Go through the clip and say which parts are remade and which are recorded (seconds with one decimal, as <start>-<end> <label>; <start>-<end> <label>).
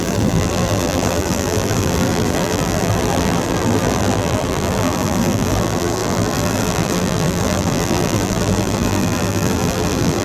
0.0-10.2 remade